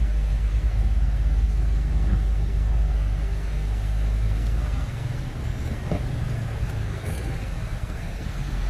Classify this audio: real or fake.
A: fake